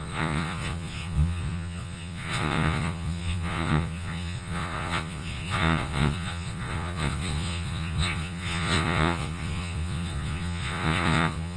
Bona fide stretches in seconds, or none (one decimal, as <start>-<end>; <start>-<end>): none